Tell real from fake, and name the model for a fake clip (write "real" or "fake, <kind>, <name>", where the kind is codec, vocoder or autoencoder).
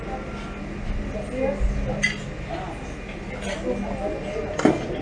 real